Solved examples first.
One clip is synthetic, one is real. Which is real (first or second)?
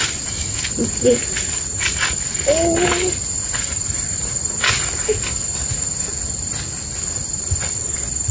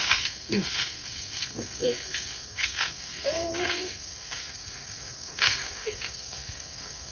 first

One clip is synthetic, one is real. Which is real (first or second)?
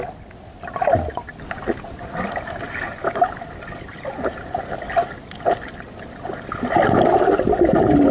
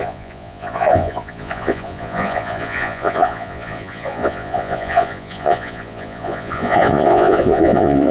first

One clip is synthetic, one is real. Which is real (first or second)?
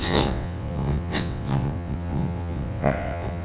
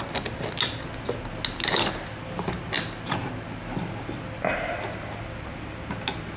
second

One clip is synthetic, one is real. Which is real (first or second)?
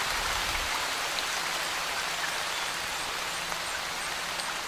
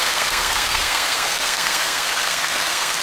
first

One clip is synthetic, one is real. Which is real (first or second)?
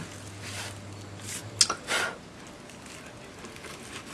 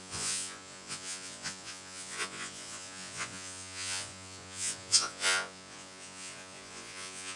first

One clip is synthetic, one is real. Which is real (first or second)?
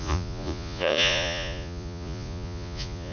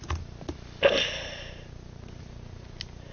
second